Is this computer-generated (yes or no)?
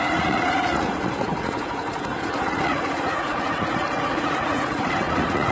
yes